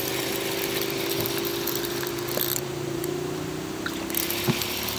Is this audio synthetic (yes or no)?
yes